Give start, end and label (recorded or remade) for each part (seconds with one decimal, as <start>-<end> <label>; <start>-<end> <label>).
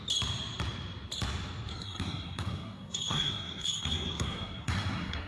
0.0-1.7 recorded; 1.7-5.3 remade